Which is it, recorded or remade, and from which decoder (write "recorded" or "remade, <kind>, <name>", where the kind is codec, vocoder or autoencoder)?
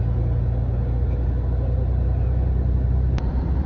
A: recorded